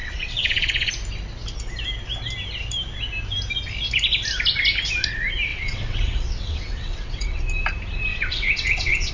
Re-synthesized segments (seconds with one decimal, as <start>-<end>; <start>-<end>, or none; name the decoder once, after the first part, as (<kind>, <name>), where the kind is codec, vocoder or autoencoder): 0.0-0.9 (vocoder, WaveNeXt); 5.5-7.4; 8.1-9.1